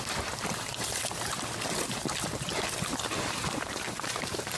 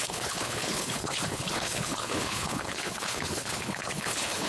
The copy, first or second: second